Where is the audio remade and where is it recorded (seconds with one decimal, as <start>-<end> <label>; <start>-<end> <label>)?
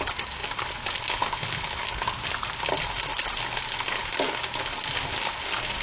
0.0-5.8 recorded